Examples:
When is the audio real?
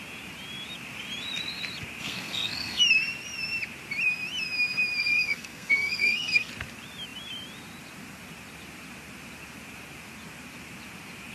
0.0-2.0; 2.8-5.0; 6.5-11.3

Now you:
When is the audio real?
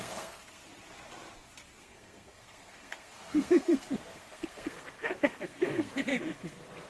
0.6-1.8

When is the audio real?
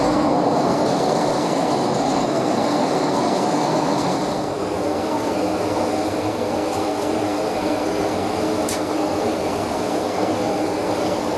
none